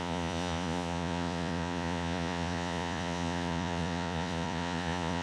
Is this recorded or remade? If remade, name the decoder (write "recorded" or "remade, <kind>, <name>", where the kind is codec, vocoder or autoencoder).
remade, vocoder, Vocos